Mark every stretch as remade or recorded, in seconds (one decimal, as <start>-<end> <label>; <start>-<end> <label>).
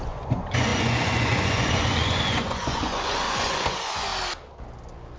0.0-4.1 remade; 4.1-5.2 recorded